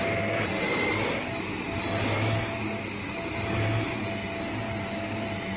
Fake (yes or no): no